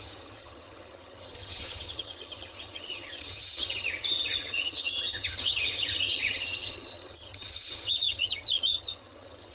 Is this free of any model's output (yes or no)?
no